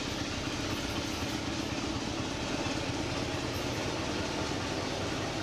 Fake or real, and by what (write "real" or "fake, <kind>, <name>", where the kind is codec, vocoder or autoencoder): real